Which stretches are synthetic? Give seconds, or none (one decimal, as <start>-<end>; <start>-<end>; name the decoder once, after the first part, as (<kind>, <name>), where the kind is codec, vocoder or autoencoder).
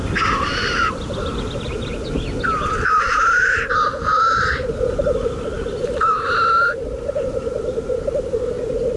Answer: none